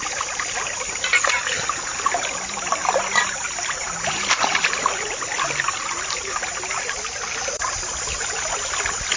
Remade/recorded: recorded